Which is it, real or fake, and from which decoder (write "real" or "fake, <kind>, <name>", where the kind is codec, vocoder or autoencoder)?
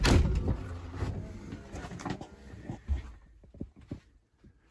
real